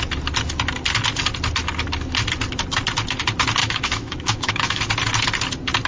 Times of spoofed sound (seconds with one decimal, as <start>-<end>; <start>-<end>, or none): 3.6-4.8